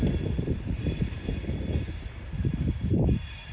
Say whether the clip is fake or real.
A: fake